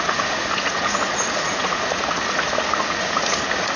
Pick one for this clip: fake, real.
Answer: fake